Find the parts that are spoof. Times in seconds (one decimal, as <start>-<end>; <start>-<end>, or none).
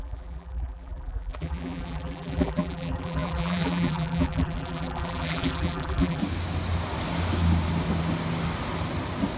0.0-6.2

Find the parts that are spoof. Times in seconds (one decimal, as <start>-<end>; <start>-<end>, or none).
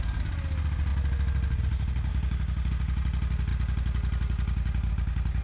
2.1-2.7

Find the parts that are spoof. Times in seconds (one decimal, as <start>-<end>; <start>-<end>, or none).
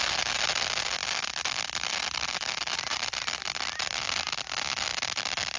1.0-4.4; 4.9-5.6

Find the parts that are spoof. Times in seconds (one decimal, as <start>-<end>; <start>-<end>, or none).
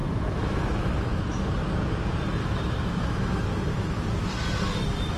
0.0-1.6; 2.4-4.0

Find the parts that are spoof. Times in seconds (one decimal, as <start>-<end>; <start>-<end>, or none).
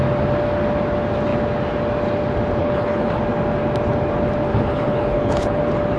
2.6-3.2; 4.5-5.6